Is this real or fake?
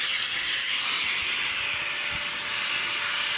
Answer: fake